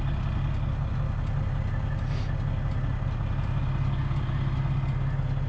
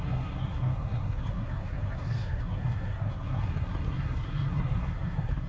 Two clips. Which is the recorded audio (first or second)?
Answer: first